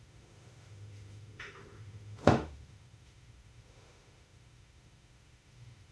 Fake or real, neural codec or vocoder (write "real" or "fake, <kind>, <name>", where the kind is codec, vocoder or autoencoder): fake, autoencoder, DAC-VAE